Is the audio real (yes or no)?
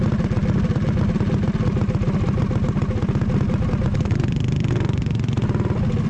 yes